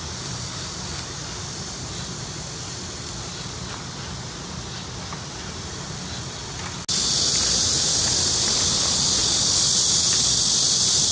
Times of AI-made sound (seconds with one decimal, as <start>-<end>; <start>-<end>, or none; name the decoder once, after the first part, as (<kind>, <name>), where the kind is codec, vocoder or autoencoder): none